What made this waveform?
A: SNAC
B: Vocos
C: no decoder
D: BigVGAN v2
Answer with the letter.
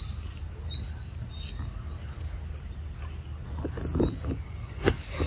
C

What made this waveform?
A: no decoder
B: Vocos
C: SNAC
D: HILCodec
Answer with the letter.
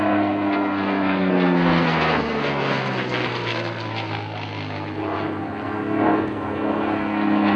C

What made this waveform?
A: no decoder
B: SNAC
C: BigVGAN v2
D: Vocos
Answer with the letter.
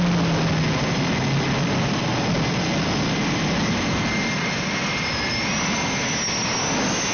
A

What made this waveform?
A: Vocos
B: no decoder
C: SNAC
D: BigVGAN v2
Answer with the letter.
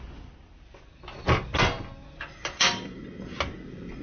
B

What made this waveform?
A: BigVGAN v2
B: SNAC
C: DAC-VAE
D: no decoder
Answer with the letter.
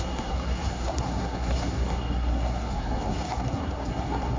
B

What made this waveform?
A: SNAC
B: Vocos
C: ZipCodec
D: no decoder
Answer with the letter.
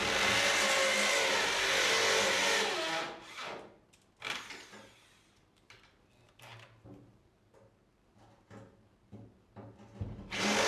D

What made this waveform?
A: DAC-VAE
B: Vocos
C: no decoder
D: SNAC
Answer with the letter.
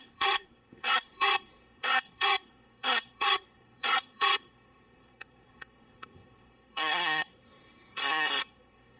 D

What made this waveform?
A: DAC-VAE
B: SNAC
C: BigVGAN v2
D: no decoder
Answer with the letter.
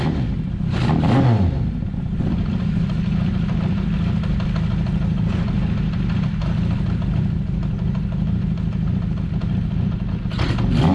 D